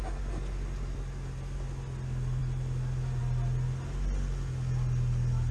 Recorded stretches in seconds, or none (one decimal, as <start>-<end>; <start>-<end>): 0.0-5.5